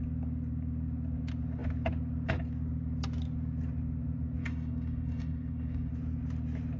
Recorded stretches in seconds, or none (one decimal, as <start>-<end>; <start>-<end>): 0.0-4.4; 5.9-6.8